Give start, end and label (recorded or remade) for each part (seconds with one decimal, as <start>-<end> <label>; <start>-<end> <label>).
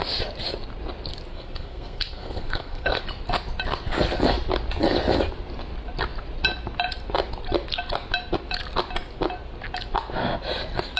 0.0-1.3 recorded; 1.3-3.0 remade; 3.0-11.0 recorded